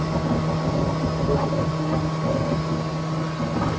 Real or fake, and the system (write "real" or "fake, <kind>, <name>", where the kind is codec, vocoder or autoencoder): real